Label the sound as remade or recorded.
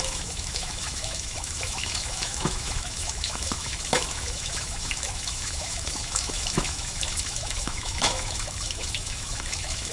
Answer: remade